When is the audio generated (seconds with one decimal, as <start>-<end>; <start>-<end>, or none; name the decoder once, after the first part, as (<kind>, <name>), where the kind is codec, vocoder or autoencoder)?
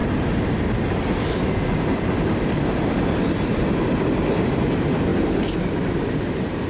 none